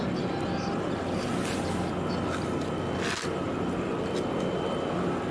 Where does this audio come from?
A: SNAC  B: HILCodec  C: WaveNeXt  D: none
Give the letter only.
D